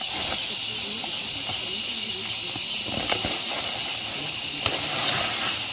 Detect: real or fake real